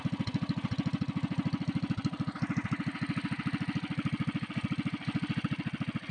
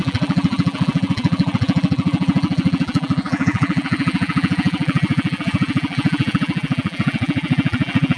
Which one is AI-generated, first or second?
second